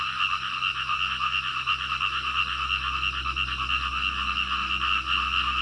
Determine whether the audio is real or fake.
real